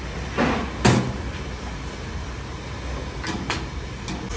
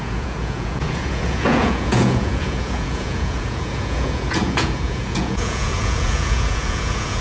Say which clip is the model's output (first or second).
second